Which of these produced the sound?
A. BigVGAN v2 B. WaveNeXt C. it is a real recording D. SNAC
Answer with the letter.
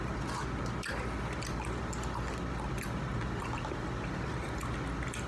C